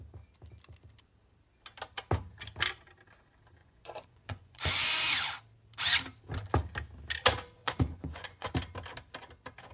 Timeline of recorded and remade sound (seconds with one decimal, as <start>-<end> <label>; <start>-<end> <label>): 0.0-3.6 recorded; 3.6-5.0 remade; 5.0-7.6 recorded; 7.6-8.5 remade; 8.5-9.7 recorded